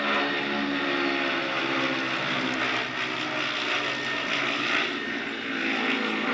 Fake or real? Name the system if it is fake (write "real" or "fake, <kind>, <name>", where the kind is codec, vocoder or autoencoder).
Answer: real